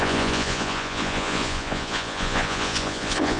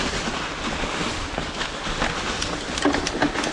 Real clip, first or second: second